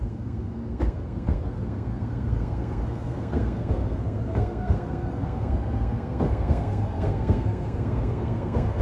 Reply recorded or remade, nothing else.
remade